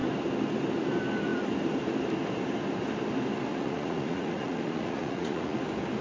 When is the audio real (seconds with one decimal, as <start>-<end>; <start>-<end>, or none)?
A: 0.0-3.5; 5.6-6.0